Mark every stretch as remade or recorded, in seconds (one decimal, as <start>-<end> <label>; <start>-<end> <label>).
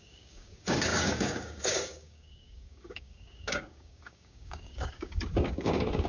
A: 0.0-6.1 remade